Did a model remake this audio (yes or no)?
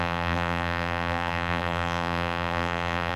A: yes